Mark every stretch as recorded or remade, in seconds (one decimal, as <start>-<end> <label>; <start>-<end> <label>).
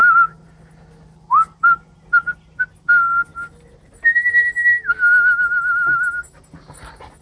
0.0-7.2 recorded